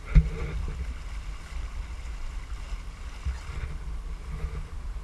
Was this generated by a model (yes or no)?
no